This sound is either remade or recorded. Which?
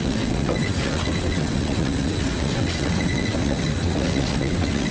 remade